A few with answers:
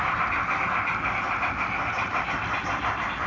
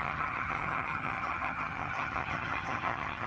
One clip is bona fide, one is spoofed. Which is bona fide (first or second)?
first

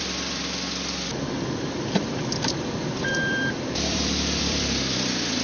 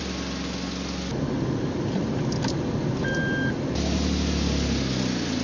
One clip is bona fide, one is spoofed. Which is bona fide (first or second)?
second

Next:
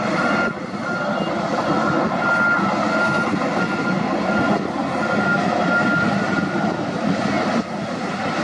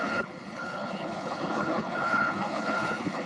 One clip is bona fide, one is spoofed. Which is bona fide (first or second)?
first